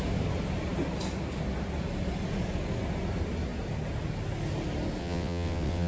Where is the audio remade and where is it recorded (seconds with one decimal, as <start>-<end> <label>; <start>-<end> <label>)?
0.0-5.0 recorded; 5.0-5.9 remade